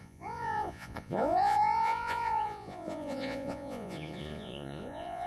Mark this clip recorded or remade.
remade